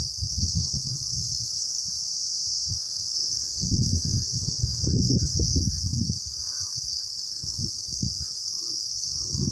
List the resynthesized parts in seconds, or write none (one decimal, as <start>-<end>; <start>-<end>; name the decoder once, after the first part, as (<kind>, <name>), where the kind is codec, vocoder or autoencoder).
0.0-1.8 (codec, SNAC); 2.7-9.5